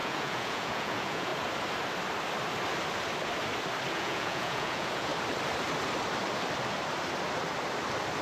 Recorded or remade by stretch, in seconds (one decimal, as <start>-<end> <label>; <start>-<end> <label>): 0.0-1.3 remade; 1.3-3.9 recorded; 3.9-5.1 remade; 5.1-8.2 recorded